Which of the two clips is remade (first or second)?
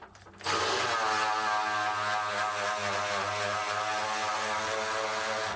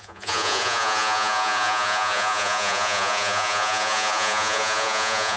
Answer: second